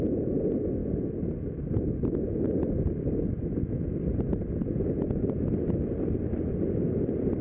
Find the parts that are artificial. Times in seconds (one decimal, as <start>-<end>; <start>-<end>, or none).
none